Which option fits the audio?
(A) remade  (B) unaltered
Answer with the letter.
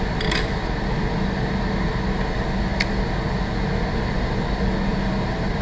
B